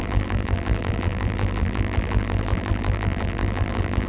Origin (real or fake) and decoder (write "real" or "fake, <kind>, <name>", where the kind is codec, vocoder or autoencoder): fake, vocoder, BigVGAN v2